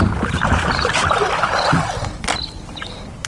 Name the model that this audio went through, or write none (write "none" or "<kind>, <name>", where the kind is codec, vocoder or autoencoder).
none